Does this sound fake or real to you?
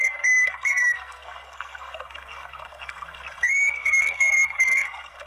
fake